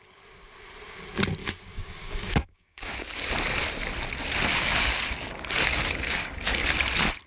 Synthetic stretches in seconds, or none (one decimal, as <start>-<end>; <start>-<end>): 1.4-3.3; 4.5-6.7